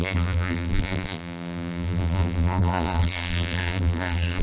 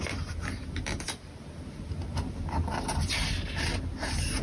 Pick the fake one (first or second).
first